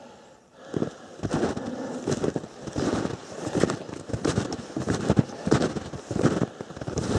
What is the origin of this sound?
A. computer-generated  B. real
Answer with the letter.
B